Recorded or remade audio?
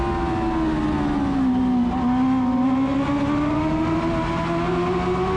recorded